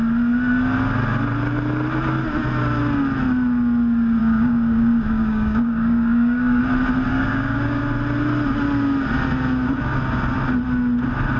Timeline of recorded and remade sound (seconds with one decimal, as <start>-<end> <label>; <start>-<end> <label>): 0.0-4.2 recorded; 4.2-6.6 remade; 6.6-7.1 recorded; 7.1-7.8 remade; 7.8-11.4 recorded